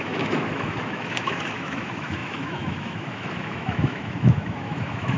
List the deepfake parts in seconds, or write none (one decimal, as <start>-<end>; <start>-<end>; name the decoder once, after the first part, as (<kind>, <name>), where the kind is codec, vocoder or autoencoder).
0.0-5.2 (autoencoder, DAC-VAE)